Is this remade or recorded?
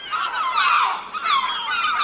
recorded